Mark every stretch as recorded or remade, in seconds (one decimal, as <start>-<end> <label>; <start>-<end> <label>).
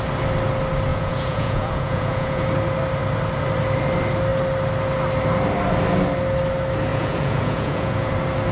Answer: 0.0-0.9 recorded; 0.9-2.4 remade; 2.4-6.9 recorded; 6.9-8.1 remade; 8.1-8.5 recorded